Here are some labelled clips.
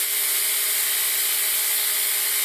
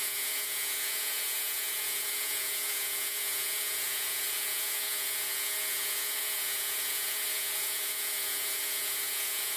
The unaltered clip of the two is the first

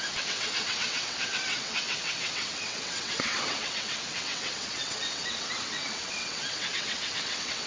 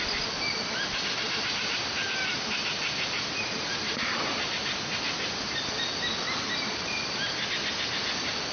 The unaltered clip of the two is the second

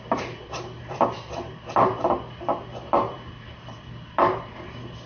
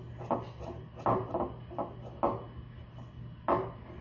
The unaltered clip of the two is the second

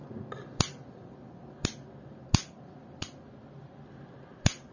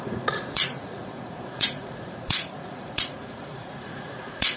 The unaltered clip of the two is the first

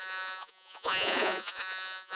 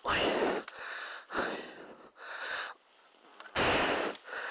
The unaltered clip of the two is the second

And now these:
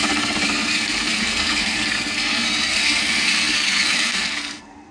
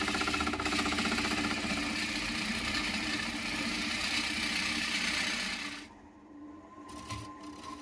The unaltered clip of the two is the second